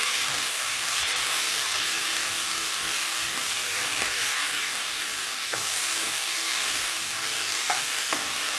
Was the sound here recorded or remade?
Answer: remade